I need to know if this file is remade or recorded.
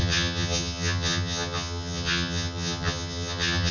remade